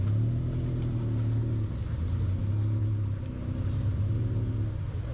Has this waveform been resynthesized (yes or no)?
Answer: no